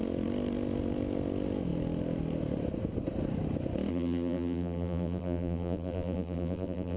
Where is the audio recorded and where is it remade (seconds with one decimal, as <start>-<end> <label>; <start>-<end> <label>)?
0.0-3.9 recorded; 3.9-7.0 remade